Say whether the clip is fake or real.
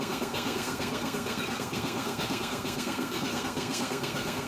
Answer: fake